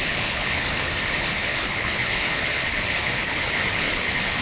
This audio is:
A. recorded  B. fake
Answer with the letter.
B